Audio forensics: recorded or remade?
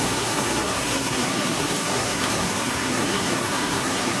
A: remade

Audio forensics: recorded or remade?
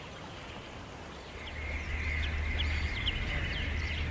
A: recorded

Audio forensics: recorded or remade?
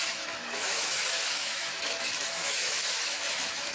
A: remade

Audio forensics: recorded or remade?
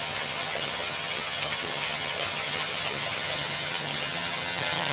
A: remade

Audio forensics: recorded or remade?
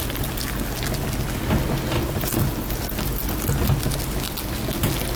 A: recorded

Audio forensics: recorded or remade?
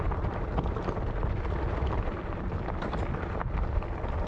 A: recorded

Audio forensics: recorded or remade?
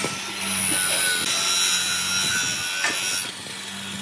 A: recorded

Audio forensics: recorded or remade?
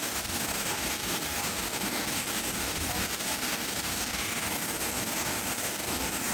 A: remade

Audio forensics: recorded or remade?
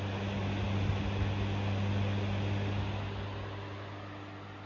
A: recorded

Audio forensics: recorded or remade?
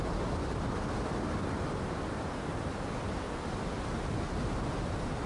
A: recorded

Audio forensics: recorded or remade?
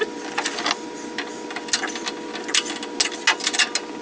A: recorded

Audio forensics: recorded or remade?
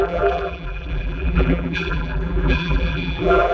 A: remade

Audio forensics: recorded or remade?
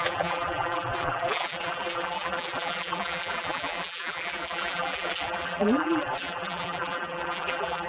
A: remade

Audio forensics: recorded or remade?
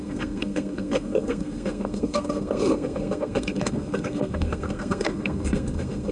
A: remade